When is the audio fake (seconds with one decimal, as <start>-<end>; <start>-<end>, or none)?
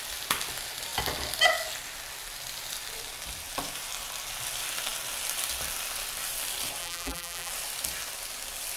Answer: 6.8-7.5